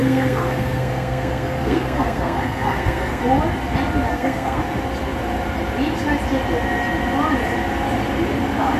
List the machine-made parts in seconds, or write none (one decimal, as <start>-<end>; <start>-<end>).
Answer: 0.0-3.2; 4.1-4.6